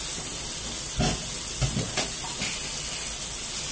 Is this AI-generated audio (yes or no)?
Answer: no